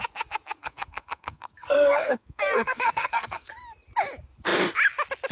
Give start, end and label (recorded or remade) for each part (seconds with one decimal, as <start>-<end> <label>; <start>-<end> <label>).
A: 0.0-0.6 recorded; 0.6-3.5 remade; 3.5-5.3 recorded